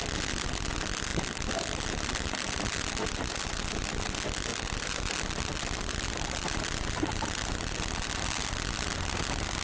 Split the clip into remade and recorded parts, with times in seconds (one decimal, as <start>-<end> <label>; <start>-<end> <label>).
0.0-1.1 recorded; 1.1-2.5 remade; 2.5-4.5 recorded; 4.5-8.4 remade; 8.4-9.6 recorded